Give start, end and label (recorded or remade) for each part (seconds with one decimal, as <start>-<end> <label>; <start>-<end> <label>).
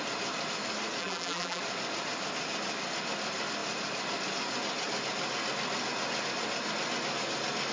0.0-1.0 recorded; 1.0-1.6 remade; 1.6-7.7 recorded